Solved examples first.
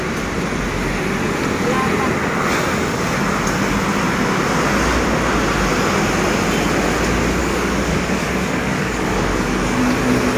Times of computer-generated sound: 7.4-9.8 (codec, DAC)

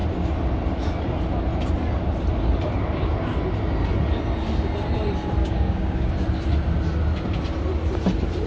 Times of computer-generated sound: 5.4-6.1 (codec, DAC)

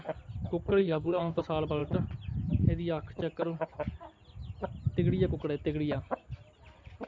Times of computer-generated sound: 0.8-1.4 (codec, DAC)

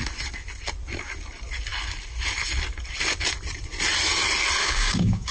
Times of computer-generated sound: 4.6-5.3 (codec, DAC)

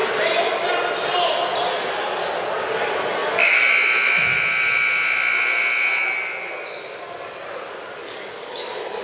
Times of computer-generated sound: 8.0-9.0 (codec, DAC)

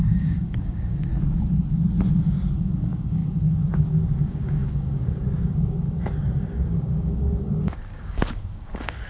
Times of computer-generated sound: 0.0-1.1 (codec, DAC); 2.6-9.1

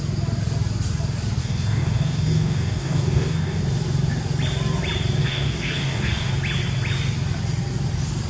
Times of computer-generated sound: 1.4-3.6 (codec, DAC); 5.2-6.3